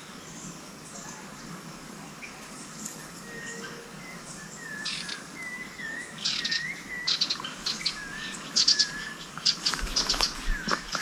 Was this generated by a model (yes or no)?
yes